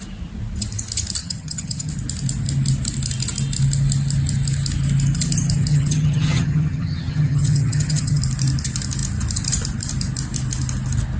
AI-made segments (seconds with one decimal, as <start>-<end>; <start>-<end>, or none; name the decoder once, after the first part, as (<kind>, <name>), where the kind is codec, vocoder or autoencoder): 1.2-1.9 (vocoder, HiFi-GAN); 5.7-8.2